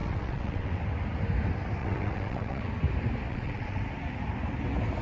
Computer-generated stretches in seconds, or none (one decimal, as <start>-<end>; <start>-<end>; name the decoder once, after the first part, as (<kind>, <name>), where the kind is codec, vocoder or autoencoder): 0.0-0.8 (vocoder, WaveNeXt); 1.8-2.7; 3.3-3.8